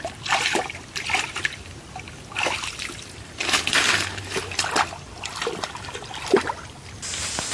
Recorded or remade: recorded